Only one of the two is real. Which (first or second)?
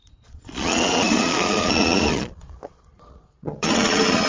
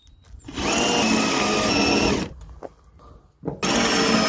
second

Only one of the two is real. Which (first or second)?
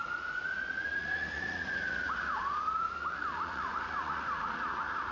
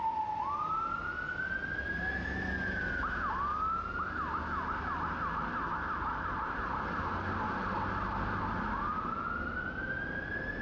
second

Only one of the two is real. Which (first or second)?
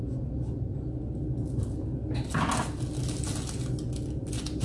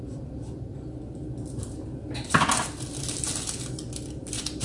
first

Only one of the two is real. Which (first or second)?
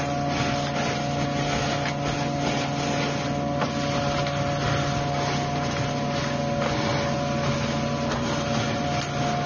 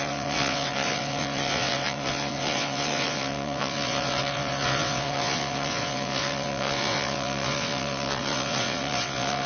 first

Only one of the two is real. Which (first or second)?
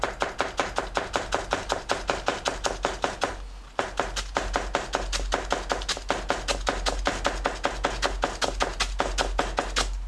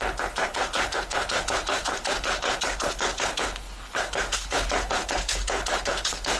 first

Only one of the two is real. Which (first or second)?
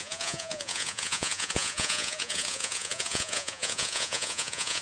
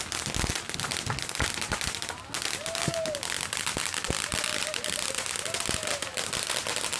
second